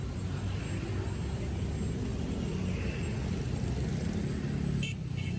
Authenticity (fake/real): real